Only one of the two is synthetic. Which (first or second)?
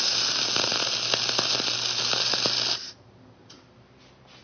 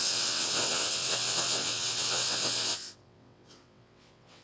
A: second